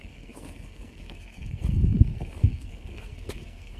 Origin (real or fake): fake